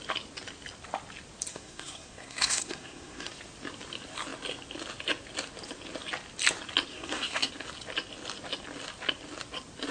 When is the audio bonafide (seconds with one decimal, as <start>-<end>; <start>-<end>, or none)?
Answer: 0.0-1.5; 3.3-6.9; 7.5-9.9